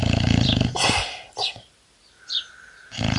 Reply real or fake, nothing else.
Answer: real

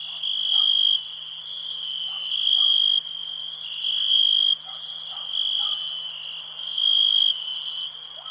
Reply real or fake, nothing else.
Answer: real